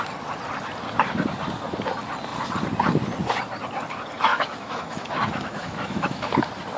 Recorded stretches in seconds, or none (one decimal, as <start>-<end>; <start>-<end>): 0.0-4.3; 6.3-6.8